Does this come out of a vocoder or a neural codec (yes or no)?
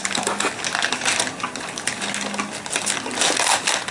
no